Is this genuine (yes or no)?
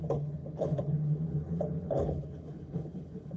no